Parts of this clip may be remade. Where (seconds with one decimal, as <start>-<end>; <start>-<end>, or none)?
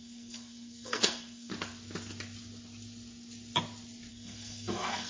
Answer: 0.0-1.5; 4.1-5.1